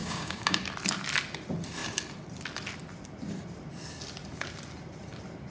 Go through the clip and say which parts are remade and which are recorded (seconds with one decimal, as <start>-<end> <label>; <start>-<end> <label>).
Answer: 0.0-0.6 remade; 0.6-5.5 recorded